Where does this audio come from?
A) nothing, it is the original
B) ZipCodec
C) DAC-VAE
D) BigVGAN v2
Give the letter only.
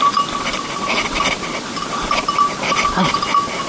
A